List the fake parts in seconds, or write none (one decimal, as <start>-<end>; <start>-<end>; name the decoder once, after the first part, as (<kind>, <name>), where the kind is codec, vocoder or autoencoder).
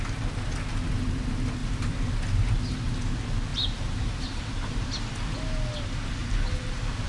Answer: 1.6-2.2 (vocoder, BigVGAN v2); 3.5-4.9; 6.2-7.1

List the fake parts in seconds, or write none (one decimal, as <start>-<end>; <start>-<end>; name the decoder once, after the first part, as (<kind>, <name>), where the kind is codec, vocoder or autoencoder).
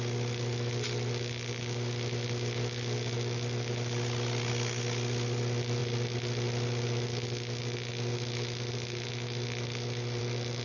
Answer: none